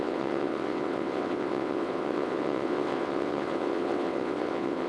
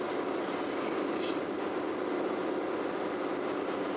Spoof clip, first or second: first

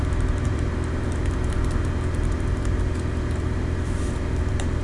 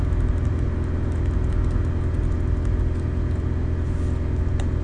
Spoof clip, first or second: first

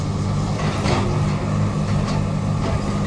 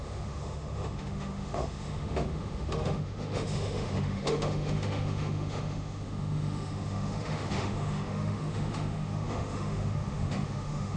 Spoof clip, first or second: second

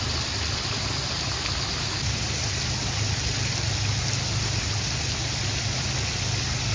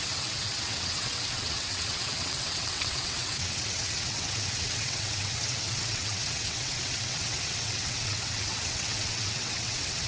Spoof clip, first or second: second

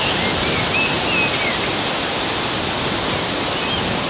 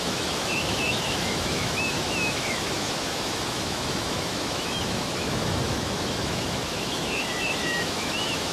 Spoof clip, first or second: second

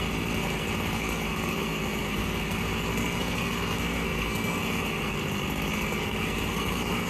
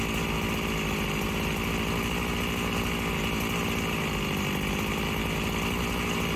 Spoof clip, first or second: first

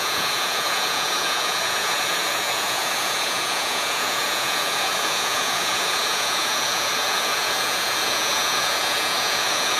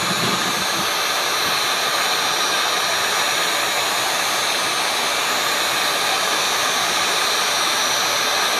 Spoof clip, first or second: first